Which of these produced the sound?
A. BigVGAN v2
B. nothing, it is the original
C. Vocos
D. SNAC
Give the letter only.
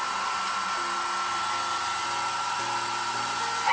B